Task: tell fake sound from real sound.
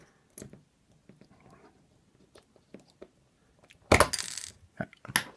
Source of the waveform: real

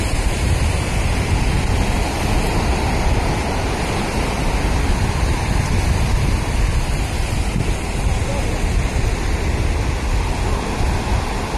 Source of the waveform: real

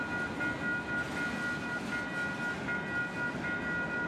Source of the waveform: real